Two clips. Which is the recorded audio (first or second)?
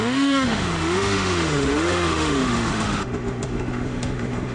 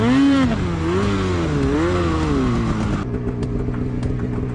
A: second